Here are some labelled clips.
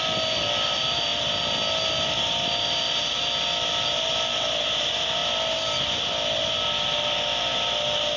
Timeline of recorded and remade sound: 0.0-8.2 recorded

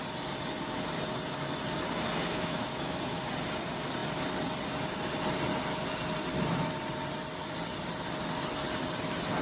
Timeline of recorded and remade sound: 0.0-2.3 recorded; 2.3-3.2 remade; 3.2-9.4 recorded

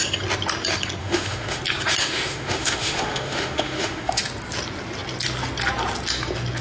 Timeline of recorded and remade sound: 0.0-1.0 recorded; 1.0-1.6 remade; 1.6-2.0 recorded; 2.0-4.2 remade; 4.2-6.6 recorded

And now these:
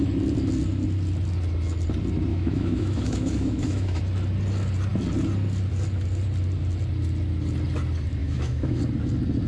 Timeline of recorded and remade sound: 0.0-2.3 recorded; 2.3-4.0 remade; 4.0-8.2 recorded; 8.2-8.8 remade; 8.8-9.5 recorded

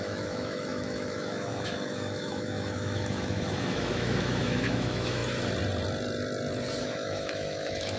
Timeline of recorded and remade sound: 0.0-5.2 remade; 5.2-6.8 recorded; 6.8-8.0 remade

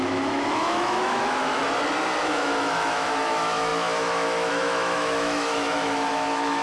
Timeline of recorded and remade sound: 0.0-1.6 remade; 1.6-2.2 recorded; 2.2-6.6 remade

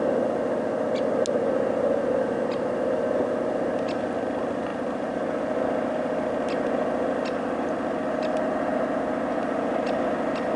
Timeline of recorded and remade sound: 0.0-10.6 recorded